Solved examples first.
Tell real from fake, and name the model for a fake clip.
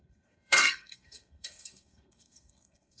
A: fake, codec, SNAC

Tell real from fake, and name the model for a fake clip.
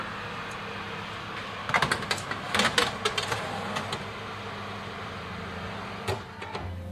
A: real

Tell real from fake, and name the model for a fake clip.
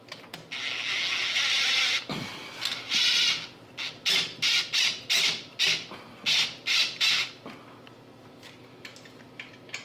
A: real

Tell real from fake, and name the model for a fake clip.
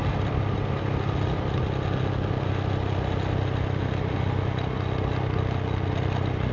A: real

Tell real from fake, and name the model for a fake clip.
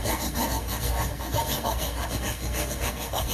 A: fake, codec, SNAC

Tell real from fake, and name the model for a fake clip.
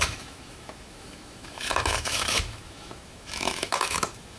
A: fake, autoencoder, DAC-VAE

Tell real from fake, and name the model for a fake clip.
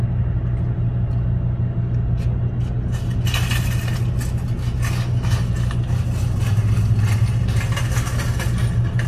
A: real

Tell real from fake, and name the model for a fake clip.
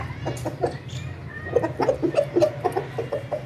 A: real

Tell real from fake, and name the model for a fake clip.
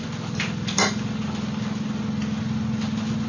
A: real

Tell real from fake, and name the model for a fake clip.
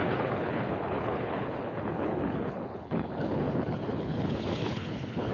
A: fake, codec, HILCodec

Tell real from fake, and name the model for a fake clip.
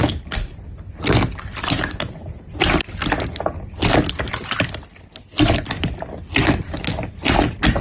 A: real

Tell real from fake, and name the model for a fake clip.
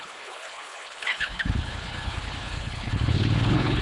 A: fake, codec, HILCodec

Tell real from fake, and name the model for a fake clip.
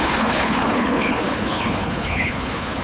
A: fake, codec, HILCodec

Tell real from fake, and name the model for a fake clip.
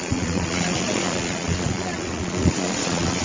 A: fake, vocoder, Vocos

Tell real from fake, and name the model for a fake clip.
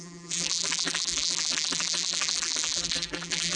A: fake, vocoder, BigVGAN v2